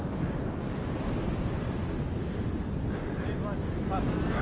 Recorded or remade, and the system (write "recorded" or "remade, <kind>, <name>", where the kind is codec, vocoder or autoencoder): recorded